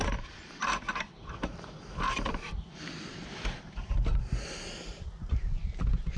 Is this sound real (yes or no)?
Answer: yes